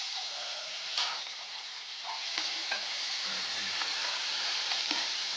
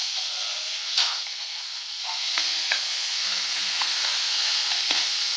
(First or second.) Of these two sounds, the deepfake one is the second